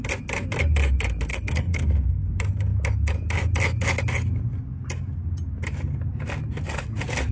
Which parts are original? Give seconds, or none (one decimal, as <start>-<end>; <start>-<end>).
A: 0.0-1.3; 2.3-7.3